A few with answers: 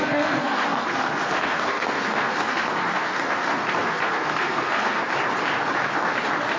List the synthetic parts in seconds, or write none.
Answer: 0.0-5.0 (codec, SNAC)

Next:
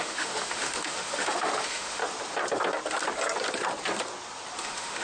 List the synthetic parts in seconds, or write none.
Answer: 0.0-2.0 (autoencoder, DAC-VAE); 4.6-5.0

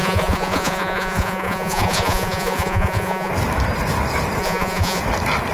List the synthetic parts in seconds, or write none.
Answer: 0.0-3.3 (vocoder, Vocos); 4.4-5.0

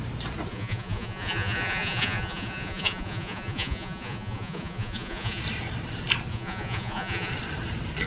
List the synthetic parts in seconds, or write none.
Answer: 0.5-5.4 (vocoder, Vocos); 6.3-7.3

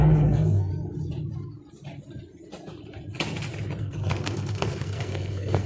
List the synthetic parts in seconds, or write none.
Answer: 0.0-0.7 (codec, SNAC); 3.8-5.7